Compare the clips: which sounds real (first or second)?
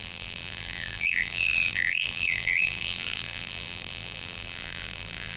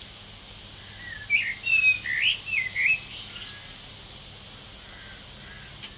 second